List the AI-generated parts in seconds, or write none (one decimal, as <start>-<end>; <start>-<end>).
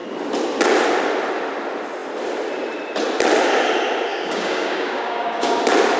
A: 4.1-5.6